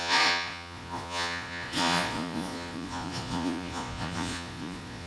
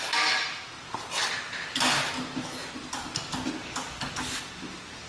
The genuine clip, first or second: second